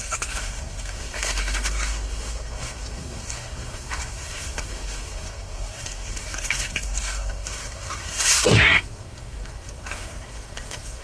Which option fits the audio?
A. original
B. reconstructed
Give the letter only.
B